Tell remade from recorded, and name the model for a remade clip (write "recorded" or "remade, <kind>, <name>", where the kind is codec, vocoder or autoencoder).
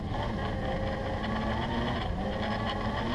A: recorded